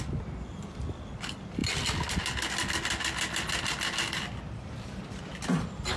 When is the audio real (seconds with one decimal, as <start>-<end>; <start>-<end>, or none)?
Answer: 0.0-6.0